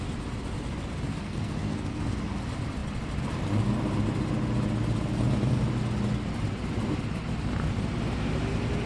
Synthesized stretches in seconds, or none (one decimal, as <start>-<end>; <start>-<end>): 1.1-2.0